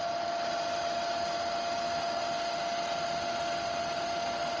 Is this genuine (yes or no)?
yes